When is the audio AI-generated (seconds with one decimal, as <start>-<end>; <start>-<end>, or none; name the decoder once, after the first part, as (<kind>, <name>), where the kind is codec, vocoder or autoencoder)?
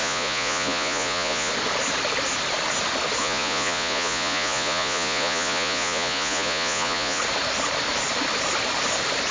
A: 0.0-1.5 (vocoder, Vocos); 3.2-7.2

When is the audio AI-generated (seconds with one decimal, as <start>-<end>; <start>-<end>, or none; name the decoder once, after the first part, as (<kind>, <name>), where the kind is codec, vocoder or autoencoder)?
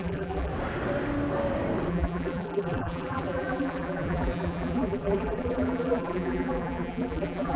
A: 0.0-0.5 (vocoder, BigVGAN v2); 1.9-7.6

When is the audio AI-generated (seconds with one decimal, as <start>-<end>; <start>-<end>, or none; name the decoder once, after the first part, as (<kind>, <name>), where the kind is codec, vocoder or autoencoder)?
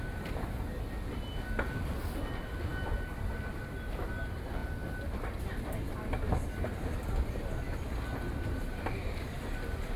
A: none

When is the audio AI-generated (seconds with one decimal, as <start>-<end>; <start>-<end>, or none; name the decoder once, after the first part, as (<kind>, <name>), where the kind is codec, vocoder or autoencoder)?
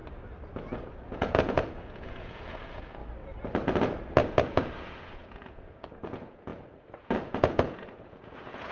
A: 0.9-3.0 (vocoder, Vocos); 4.2-8.7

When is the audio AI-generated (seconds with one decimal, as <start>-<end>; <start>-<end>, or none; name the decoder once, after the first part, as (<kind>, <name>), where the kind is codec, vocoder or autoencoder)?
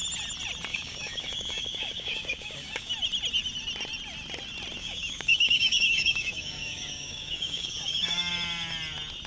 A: 0.7-2.9 (codec, DAC); 4.8-8.3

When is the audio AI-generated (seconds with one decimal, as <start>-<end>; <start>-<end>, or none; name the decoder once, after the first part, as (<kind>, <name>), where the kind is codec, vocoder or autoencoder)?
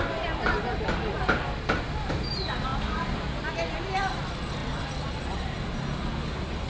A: none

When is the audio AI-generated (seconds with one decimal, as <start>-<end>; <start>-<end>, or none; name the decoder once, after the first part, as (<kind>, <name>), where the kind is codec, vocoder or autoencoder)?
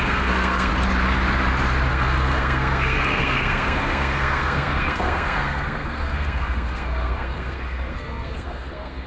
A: 0.0-0.7 (codec, SNAC); 1.9-9.1